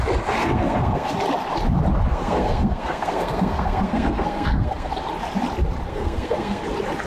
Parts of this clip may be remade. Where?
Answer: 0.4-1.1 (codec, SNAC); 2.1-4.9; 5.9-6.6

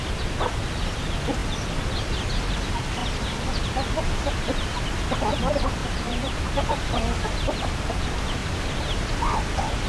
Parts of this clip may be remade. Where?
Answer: 5.8-6.6 (vocoder, BigVGAN v2); 8.4-9.1

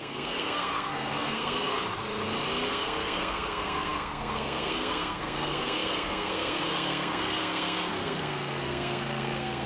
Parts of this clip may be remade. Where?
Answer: 0.0-1.8 (codec, SNAC); 2.7-9.7

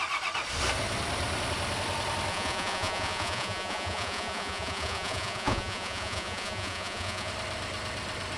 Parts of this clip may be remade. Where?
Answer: 2.3-7.3 (vocoder, Vocos)

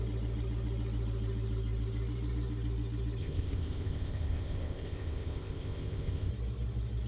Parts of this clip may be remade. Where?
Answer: 3.2-6.3 (codec, ZipCodec)